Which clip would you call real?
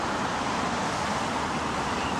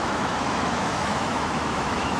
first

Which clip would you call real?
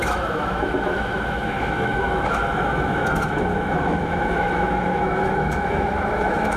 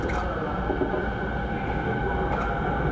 second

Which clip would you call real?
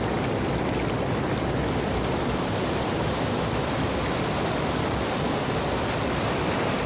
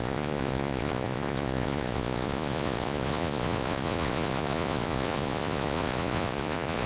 first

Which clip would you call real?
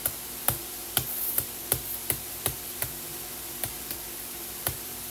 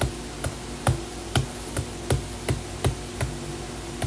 second